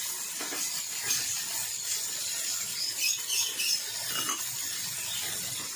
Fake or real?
real